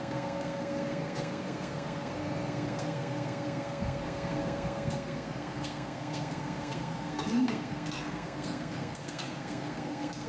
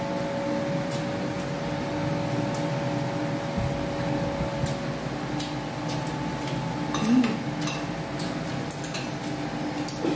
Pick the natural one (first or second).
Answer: second